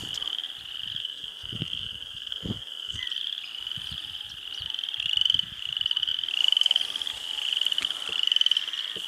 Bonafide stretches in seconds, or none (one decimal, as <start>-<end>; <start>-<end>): 0.0-1.0; 3.0-9.1